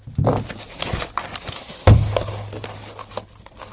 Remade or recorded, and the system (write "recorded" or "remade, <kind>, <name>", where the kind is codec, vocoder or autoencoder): recorded